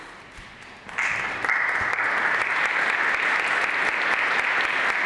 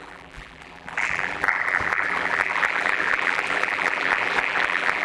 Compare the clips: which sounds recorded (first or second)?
first